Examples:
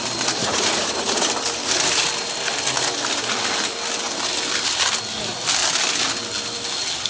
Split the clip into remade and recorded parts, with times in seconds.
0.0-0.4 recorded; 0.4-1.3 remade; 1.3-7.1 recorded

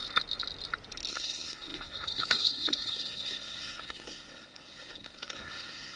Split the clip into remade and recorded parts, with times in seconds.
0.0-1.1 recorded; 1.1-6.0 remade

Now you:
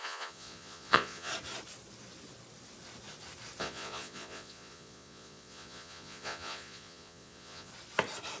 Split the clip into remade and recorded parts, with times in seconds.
0.0-1.3 remade; 1.3-3.6 recorded; 3.6-7.7 remade; 7.7-8.4 recorded